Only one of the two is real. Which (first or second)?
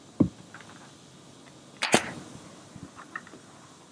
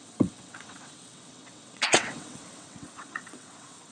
first